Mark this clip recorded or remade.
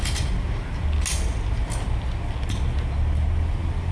recorded